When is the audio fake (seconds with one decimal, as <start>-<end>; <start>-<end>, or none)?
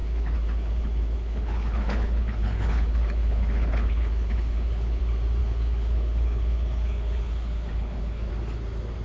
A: 0.0-5.0; 5.4-8.3